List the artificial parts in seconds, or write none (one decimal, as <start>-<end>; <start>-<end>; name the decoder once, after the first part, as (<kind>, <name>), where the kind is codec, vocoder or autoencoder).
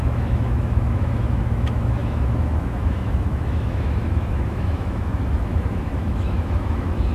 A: 0.0-7.1 (autoencoder, DAC-VAE)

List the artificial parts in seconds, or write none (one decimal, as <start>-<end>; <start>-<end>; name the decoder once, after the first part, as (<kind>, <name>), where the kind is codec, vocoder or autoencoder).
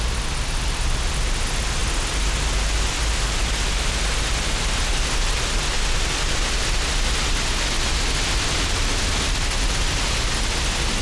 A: none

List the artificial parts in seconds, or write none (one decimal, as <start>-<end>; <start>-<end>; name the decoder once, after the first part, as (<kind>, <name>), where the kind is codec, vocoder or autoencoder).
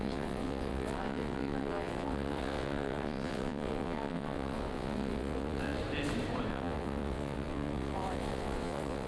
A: 0.0-5.8 (vocoder, WaveNeXt); 6.5-9.1